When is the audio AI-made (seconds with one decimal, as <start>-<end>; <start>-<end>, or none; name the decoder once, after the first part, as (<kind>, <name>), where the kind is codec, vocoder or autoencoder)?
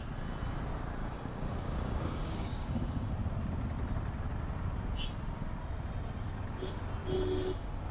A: 1.0-3.1 (codec, DAC)